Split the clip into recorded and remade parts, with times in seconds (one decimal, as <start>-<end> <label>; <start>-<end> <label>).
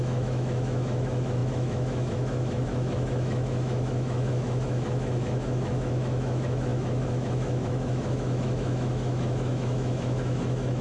0.0-10.8 remade